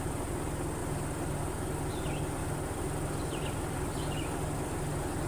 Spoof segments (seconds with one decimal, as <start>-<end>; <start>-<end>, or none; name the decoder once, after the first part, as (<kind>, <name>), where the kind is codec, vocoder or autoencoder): 0.8-1.9 (vocoder, BigVGAN v2); 2.4-5.3